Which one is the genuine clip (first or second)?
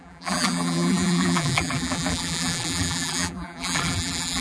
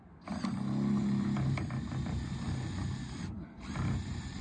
second